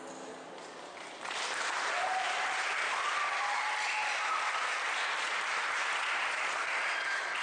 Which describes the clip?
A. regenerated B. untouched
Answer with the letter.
B